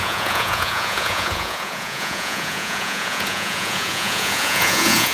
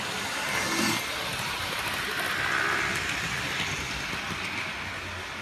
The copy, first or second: first